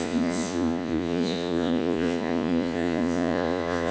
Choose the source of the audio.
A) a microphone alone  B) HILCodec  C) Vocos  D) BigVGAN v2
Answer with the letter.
C